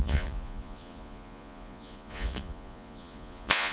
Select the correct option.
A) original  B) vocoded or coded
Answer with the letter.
B